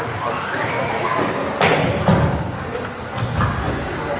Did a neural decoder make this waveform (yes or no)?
no